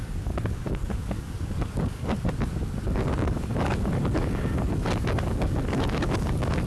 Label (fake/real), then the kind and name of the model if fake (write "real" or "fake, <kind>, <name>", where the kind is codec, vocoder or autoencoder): fake, codec, DAC